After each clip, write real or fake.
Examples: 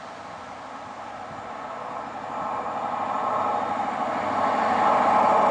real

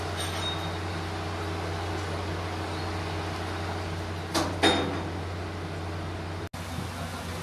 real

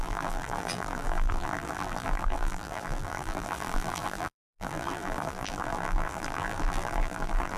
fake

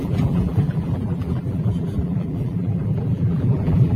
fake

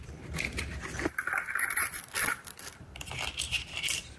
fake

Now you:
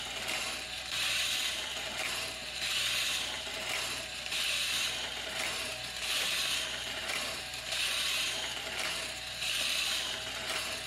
fake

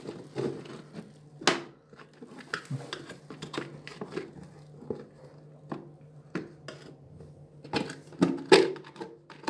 real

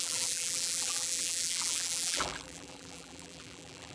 fake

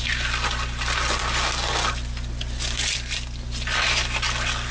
real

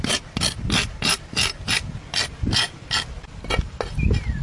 real